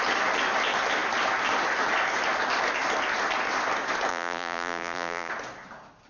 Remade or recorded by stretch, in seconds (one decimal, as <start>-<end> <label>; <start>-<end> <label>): 0.0-4.1 recorded; 4.1-5.3 remade; 5.3-6.1 recorded